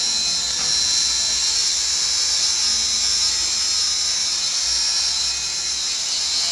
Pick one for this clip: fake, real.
real